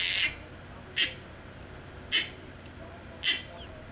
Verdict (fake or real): real